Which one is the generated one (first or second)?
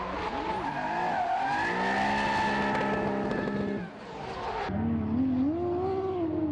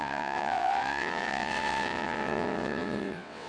second